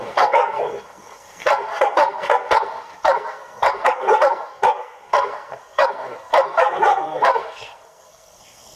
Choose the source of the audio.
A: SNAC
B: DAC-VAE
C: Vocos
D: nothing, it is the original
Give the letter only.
A